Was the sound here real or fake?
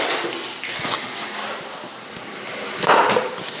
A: real